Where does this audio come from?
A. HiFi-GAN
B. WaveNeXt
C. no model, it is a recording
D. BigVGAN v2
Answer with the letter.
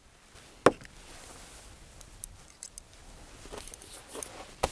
C